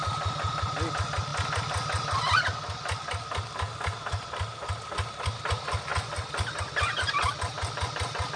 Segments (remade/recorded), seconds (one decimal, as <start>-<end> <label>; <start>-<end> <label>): 0.0-8.4 recorded